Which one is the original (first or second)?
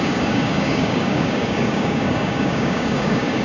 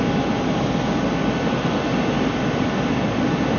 second